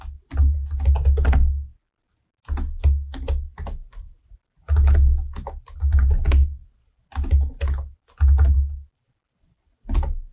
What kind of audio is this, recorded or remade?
recorded